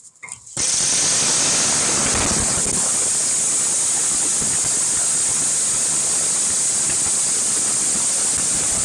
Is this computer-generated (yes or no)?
no